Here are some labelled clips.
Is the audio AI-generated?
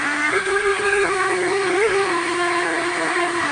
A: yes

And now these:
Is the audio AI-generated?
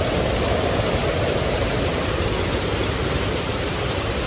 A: no